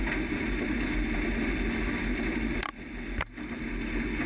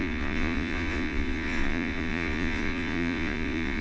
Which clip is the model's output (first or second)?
second